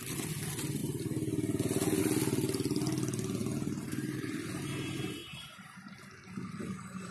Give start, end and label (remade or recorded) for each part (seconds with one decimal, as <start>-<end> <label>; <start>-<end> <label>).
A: 0.0-3.4 recorded; 3.4-4.6 remade; 4.6-5.2 recorded; 5.2-5.9 remade; 5.9-7.1 recorded